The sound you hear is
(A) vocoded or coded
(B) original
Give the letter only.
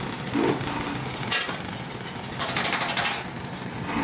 B